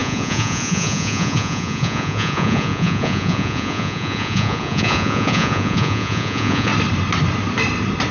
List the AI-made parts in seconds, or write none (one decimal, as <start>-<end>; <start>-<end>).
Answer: 0.0-6.7

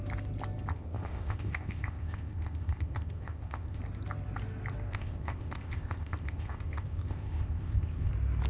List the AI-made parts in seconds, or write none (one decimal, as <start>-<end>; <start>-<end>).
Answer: 0.7-3.8; 4.9-8.1

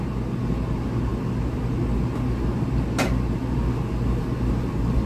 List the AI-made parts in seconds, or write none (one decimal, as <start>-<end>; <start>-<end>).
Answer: none

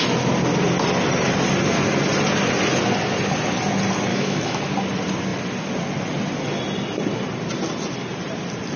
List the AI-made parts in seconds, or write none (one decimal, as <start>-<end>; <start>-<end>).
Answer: 4.1-4.6

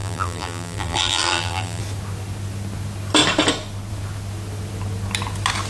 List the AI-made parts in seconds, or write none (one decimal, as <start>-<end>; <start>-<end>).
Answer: 0.0-1.8

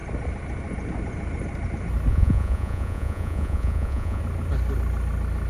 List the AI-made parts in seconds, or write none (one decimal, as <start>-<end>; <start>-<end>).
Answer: 2.1-4.2